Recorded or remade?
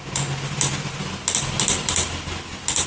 recorded